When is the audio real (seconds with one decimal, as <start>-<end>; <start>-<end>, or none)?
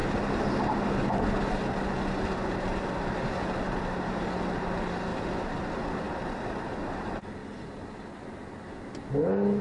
0.0-9.6